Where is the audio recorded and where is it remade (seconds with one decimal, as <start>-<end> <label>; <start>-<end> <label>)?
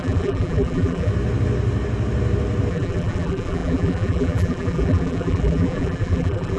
0.0-1.1 remade; 1.1-2.7 recorded; 2.7-6.6 remade